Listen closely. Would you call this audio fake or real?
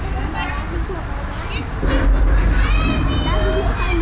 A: real